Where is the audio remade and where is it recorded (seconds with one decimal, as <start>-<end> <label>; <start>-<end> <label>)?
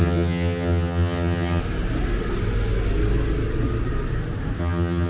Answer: 0.0-1.6 remade; 1.6-4.6 recorded; 4.6-5.1 remade